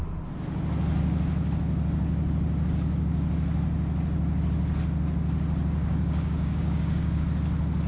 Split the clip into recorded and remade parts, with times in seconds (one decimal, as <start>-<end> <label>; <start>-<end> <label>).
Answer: 0.0-5.8 recorded; 5.8-7.2 remade; 7.2-7.9 recorded